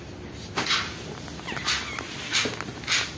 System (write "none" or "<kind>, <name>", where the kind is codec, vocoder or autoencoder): none